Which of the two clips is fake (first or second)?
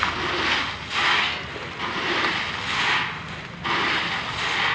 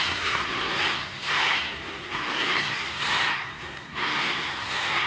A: second